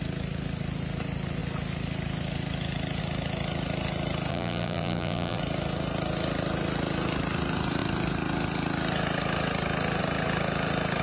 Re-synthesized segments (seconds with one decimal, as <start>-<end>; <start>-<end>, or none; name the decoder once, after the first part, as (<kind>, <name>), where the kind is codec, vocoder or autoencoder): 4.3-5.4 (vocoder, BigVGAN v2)